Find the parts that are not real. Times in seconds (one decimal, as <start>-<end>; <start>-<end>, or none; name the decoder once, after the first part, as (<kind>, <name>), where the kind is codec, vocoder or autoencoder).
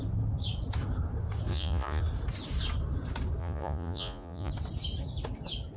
1.5-2.0 (vocoder, Vocos); 3.4-4.5